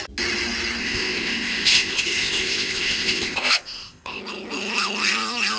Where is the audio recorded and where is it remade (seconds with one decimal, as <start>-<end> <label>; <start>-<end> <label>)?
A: 0.0-0.8 recorded; 0.8-4.2 remade; 4.2-5.6 recorded